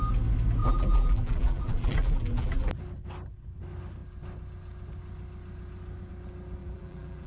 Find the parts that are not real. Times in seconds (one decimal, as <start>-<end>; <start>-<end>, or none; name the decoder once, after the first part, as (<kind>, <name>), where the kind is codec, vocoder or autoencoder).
0.6-2.7 (vocoder, BigVGAN v2); 6.6-7.3